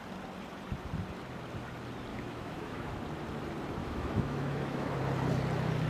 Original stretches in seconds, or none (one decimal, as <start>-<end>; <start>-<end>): 0.0-2.1; 2.9-3.8; 5.0-5.9